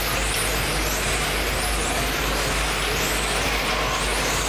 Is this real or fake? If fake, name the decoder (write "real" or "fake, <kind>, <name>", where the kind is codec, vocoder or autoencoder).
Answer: real